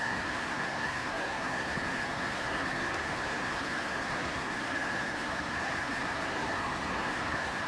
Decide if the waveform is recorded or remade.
remade